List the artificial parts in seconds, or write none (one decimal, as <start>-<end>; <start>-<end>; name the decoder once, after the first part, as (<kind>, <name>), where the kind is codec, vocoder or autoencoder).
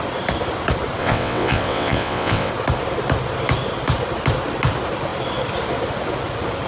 1.0-2.5 (vocoder, WaveNeXt)